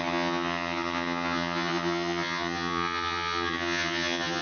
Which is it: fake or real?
fake